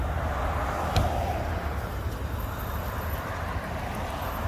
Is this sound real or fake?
real